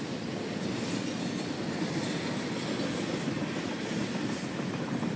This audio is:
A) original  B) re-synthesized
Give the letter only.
A